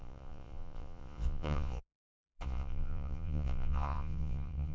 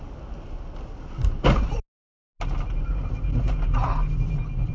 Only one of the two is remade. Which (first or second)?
first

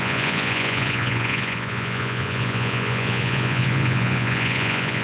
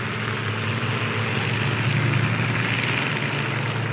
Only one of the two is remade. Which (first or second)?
first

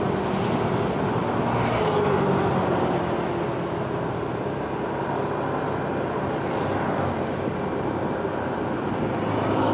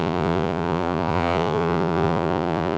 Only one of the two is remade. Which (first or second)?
second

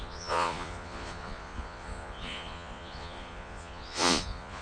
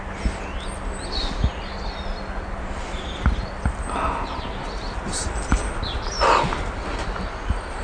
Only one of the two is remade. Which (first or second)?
first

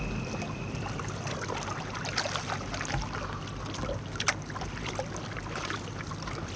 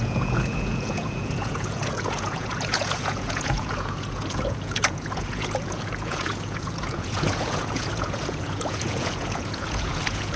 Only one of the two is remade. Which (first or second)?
second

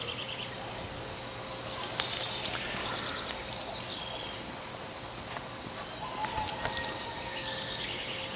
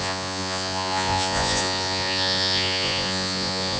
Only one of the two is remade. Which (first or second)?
second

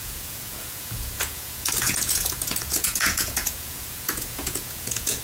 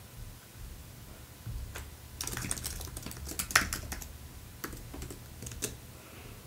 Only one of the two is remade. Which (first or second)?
first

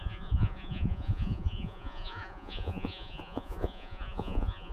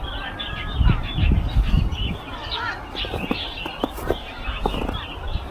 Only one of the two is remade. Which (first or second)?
first